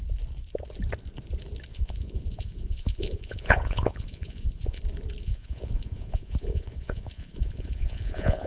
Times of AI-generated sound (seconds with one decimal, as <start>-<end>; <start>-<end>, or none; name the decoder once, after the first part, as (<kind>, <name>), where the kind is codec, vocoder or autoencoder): 1.7-4.8 (vocoder, Vocos); 5.2-8.5